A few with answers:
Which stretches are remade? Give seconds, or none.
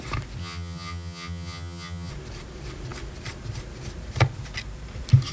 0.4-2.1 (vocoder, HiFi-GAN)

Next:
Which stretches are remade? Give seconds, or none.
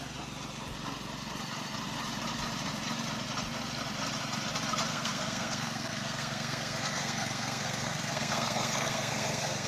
4.9-9.7 (codec, SNAC)